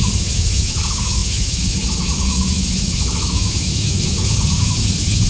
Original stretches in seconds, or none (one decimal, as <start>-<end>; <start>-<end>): none